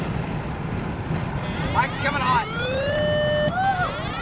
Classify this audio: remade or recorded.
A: recorded